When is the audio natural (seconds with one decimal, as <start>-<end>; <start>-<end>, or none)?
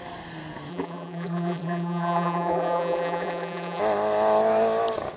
0.0-0.7; 3.8-5.2